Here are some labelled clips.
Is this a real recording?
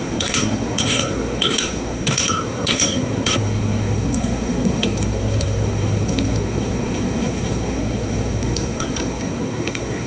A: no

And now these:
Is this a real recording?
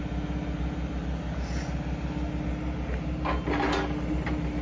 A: yes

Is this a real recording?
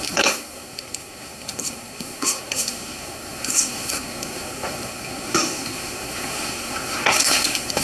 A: no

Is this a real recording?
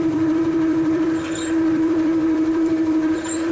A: no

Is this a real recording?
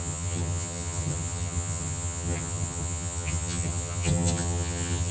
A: no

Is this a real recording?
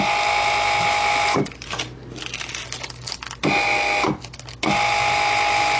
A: yes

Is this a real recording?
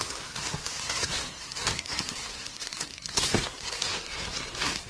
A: no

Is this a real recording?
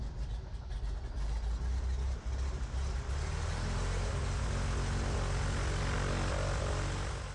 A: yes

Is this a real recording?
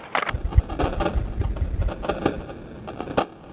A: yes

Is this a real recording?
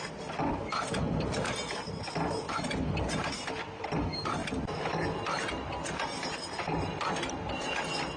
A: yes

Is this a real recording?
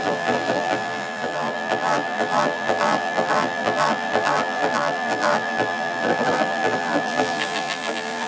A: no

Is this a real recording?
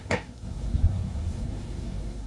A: no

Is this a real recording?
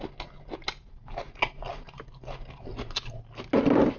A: yes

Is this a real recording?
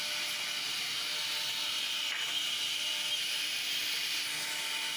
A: yes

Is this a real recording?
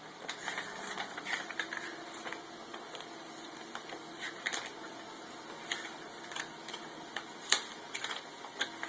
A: yes